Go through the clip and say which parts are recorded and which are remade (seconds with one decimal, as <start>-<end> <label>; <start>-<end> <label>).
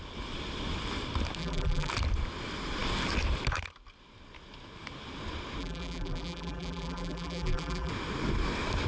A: 0.0-1.4 recorded; 1.4-1.9 remade; 1.9-5.6 recorded; 5.6-7.9 remade; 7.9-8.9 recorded